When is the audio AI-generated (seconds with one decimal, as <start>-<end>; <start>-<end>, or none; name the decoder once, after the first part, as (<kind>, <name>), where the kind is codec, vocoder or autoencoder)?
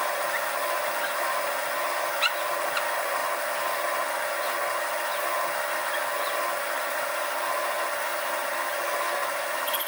none